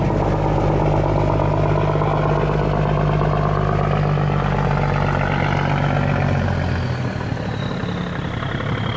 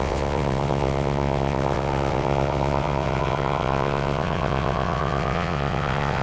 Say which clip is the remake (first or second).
second